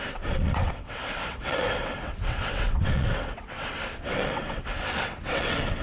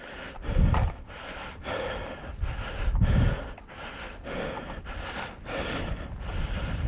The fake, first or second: first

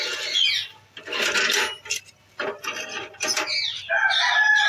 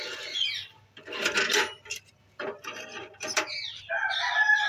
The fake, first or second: second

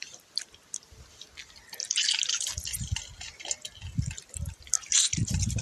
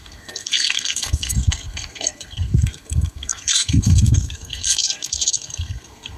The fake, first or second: second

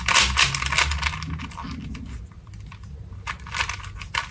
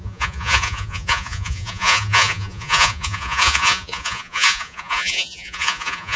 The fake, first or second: second